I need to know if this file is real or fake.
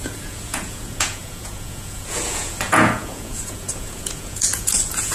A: fake